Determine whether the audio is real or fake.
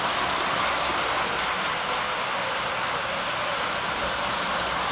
real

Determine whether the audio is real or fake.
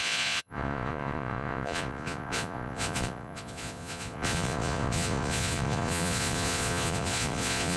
fake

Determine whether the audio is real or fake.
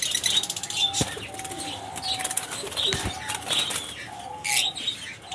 real